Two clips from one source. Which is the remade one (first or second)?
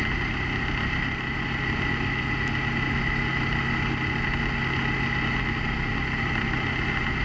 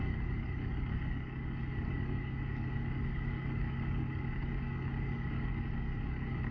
second